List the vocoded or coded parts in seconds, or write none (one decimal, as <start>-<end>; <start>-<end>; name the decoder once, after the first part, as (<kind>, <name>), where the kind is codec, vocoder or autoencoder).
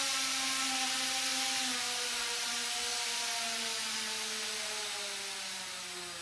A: none